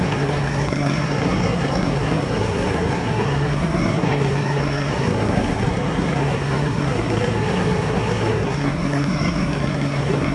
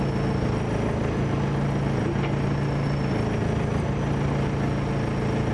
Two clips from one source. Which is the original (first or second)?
second